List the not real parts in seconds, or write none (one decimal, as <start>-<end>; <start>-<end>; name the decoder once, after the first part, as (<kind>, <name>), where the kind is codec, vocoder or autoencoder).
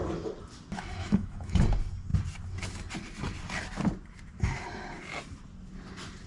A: 1.0-1.6 (autoencoder, DAC-VAE)